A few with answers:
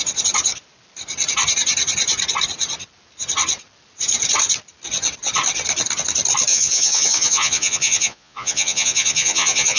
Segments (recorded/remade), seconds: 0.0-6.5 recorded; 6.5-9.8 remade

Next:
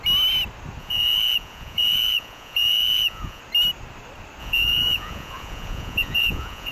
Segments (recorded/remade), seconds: 0.0-0.8 recorded; 0.8-3.4 remade; 3.4-4.4 recorded; 4.4-6.7 remade

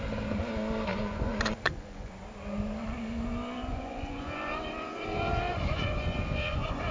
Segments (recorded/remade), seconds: 0.0-0.9 recorded; 0.9-2.1 remade; 2.1-3.7 recorded; 3.7-6.9 remade

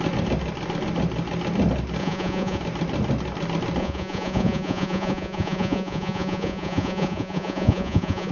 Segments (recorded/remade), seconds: 0.0-2.0 recorded; 2.0-2.6 remade; 2.6-3.8 recorded; 3.8-8.3 remade